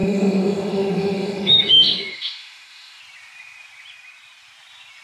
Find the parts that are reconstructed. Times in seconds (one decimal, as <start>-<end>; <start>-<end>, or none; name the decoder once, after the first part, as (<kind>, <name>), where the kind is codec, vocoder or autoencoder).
0.0-3.0 (autoencoder, DAC-VAE)